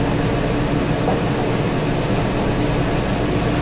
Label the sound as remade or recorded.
recorded